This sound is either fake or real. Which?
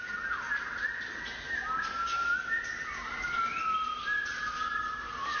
real